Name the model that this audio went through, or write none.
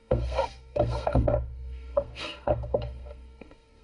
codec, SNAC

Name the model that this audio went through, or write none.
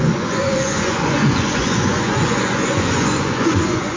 vocoder, Vocos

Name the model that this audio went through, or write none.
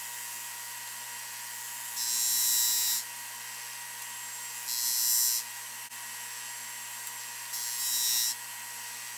none